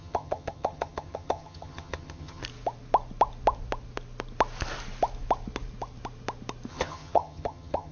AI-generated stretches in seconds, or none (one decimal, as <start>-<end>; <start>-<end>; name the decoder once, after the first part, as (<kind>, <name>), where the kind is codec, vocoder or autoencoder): 0.0-2.4 (vocoder, HiFi-GAN); 6.7-7.9